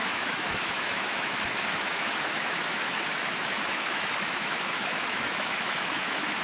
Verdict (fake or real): fake